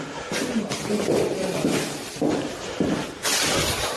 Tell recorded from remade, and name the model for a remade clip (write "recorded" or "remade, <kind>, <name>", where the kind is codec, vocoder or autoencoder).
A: recorded